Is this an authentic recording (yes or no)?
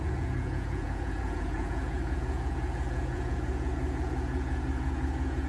no